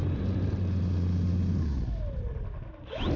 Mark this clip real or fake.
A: real